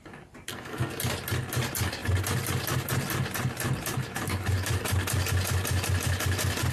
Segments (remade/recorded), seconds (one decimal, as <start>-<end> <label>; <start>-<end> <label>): 0.0-0.5 recorded; 0.5-1.0 remade; 1.0-6.7 recorded